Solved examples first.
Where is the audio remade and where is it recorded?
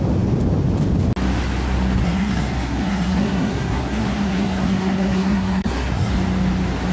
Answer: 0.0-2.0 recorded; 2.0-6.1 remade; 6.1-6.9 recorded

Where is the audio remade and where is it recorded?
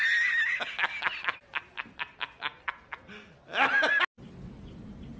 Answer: 0.0-5.2 recorded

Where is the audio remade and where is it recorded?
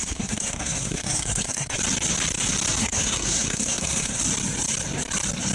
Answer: 0.0-1.8 remade; 1.8-2.8 recorded; 2.8-4.2 remade; 4.2-5.5 recorded